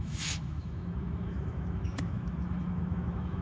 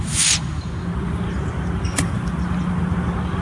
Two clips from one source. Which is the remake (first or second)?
first